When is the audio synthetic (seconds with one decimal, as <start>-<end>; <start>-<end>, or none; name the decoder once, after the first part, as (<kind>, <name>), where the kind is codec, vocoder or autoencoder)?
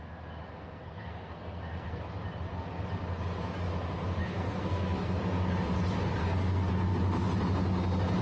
0.5-2.0 (codec, SNAC); 4.2-5.2; 6.2-6.7